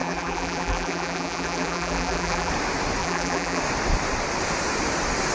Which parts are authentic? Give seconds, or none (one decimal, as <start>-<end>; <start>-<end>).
2.5-3.0; 3.6-5.3